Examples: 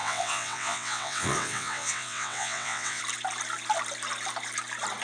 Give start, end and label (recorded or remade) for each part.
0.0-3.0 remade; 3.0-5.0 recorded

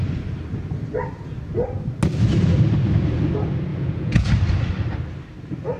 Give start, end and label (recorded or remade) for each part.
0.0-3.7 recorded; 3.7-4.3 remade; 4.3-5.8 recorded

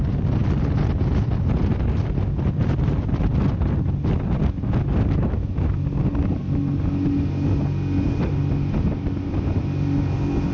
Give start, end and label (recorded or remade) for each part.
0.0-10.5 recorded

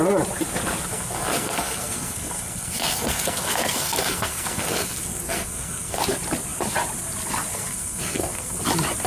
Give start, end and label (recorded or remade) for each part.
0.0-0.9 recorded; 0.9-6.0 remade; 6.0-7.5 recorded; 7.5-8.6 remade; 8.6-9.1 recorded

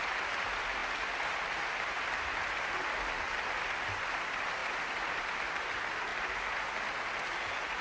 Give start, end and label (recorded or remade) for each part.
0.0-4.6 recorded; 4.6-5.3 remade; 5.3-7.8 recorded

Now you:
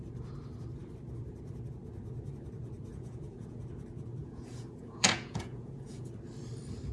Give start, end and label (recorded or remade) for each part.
0.0-2.9 recorded; 2.9-3.6 remade; 3.6-4.2 recorded; 4.2-6.1 remade; 6.1-6.9 recorded

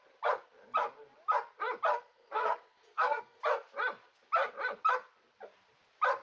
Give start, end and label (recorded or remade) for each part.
0.0-1.9 recorded; 1.9-3.4 remade; 3.4-6.2 recorded